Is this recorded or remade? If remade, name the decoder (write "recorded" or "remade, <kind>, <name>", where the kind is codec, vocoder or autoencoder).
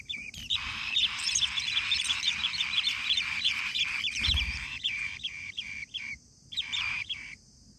remade, vocoder, BigVGAN v2